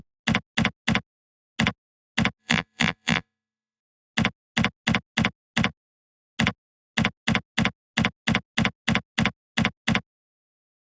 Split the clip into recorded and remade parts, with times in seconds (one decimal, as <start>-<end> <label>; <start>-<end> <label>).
0.0-2.4 recorded; 2.4-3.8 remade; 3.8-10.9 recorded